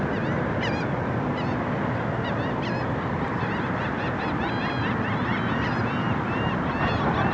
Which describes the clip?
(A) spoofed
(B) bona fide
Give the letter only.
B